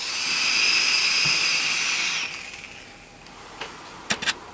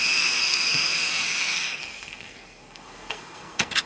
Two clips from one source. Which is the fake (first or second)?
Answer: second